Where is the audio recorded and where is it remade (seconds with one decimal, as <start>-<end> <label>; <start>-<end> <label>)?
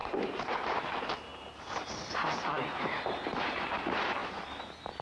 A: 0.0-5.0 remade